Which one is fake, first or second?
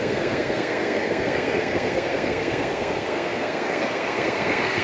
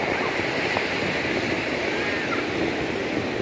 first